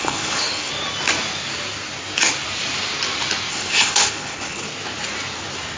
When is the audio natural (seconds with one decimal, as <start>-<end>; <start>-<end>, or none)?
0.7-3.5; 4.7-5.8